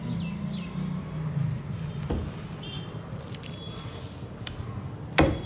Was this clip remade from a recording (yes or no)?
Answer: no